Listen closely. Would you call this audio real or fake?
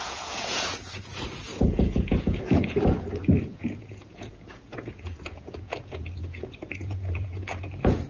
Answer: fake